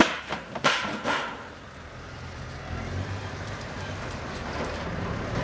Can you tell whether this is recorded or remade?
remade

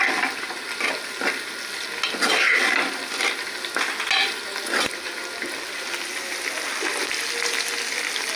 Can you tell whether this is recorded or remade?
recorded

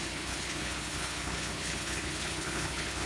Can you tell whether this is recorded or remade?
remade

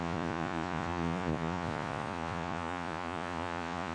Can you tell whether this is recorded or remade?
remade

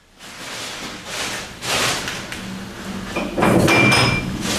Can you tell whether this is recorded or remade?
recorded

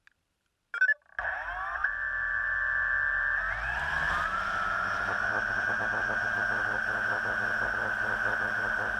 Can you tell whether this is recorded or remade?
recorded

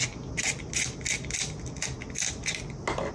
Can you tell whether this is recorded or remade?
recorded